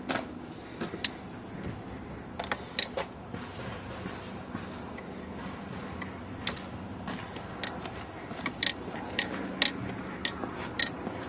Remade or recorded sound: recorded